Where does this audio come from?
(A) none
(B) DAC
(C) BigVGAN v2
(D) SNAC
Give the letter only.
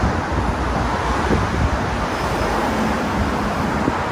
A